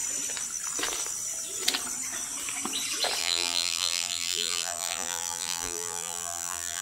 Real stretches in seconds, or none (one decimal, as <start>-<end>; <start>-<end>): 0.0-3.2